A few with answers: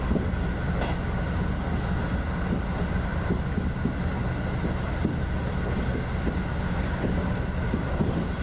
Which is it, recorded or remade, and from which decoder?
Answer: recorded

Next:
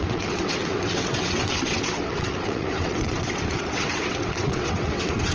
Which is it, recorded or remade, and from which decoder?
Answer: remade, vocoder, WaveNeXt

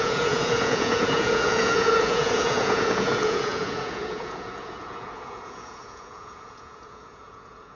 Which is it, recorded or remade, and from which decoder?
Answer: remade, vocoder, Vocos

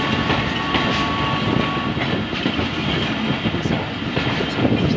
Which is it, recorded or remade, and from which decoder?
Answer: recorded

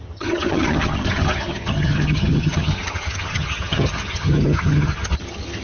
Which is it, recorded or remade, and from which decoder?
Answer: remade, vocoder, HiFi-GAN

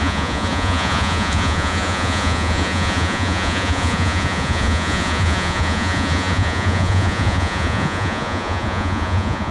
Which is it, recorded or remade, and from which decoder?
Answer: remade, vocoder, Vocos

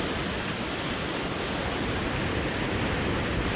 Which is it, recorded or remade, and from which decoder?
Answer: recorded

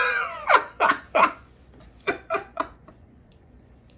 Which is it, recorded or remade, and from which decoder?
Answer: remade, vocoder, Vocos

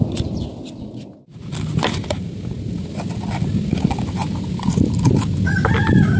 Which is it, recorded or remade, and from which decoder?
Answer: recorded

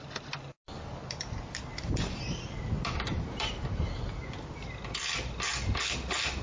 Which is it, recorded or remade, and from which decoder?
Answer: recorded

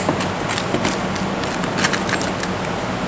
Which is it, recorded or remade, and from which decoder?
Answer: recorded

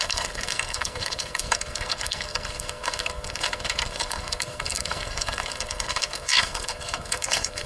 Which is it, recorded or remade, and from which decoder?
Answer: remade, codec, SNAC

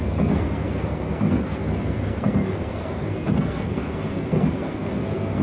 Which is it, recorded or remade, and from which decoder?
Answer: remade, codec, SNAC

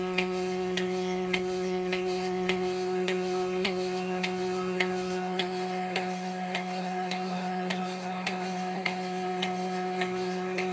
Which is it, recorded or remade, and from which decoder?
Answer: remade, codec, SNAC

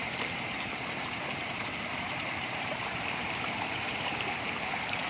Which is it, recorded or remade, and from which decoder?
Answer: remade, vocoder, BigVGAN v2